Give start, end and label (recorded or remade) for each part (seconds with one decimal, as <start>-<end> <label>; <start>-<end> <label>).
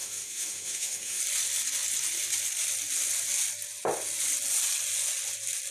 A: 0.0-1.2 remade; 1.2-5.7 recorded